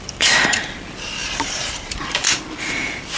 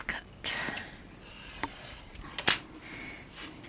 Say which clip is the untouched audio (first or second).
second